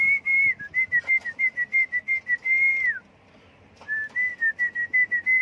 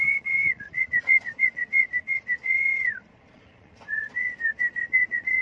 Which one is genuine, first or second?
first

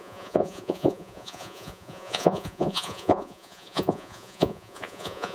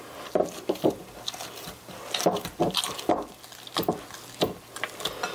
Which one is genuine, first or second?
second